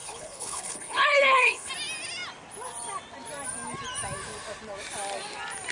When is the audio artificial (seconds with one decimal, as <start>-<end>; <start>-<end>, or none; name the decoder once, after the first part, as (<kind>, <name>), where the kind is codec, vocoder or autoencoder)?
0.0-1.7 (codec, HILCodec)